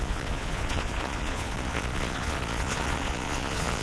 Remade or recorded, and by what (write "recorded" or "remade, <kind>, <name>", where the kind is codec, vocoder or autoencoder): remade, vocoder, Vocos